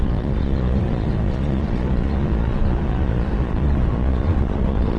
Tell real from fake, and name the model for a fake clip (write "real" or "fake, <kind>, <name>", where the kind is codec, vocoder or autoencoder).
fake, vocoder, Vocos